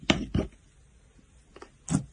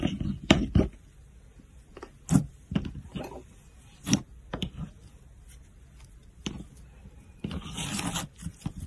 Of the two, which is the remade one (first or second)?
second